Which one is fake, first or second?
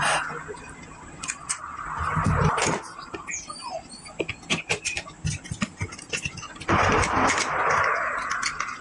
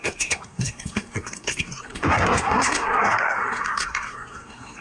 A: second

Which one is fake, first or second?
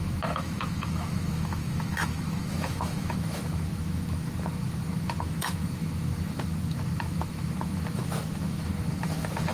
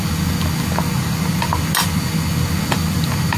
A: first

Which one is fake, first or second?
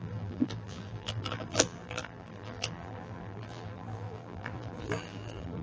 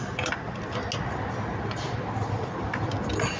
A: first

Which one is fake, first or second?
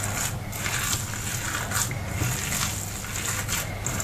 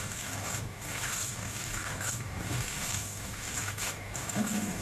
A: second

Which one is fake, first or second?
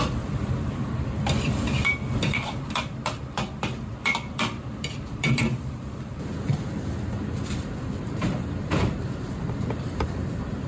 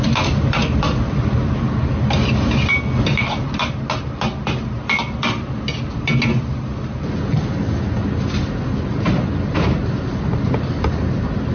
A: first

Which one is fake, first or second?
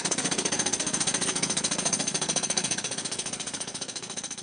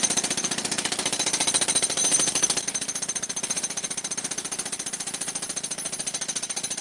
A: first